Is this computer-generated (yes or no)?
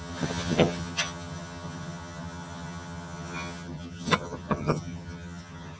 yes